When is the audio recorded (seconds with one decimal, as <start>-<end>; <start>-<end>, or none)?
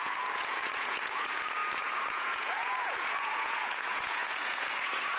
none